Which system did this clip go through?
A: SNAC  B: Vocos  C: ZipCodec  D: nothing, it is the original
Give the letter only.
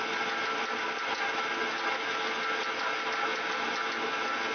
D